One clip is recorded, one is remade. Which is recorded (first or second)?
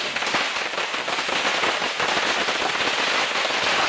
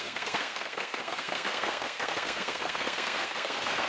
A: first